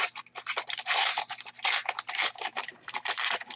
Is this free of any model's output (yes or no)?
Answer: no